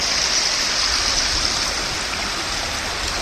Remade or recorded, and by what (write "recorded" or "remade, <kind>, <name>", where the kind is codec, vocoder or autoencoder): recorded